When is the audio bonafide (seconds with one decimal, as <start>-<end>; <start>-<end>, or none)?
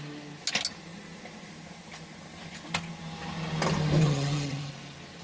0.0-4.0; 4.7-5.2